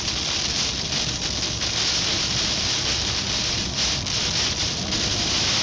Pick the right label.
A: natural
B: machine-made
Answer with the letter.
A